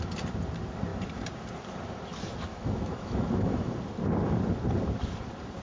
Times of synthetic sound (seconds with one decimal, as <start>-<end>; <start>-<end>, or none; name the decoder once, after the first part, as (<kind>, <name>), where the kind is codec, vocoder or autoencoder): 2.5-3.7 (autoencoder, DAC-VAE)

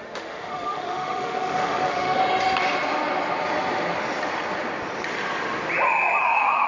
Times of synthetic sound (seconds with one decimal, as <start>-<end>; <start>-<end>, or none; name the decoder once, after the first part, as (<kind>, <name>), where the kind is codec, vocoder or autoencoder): 0.0-2.2 (autoencoder, DAC-VAE); 6.2-6.7

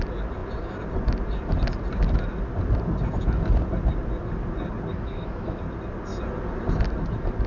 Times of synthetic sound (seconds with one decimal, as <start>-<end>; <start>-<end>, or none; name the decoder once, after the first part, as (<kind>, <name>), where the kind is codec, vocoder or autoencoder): 4.9-5.6 (autoencoder, DAC-VAE)